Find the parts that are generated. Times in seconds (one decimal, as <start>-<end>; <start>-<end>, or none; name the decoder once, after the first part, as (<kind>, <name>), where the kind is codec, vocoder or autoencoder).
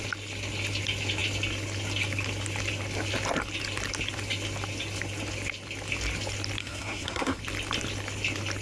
6.6-7.4 (codec, SNAC)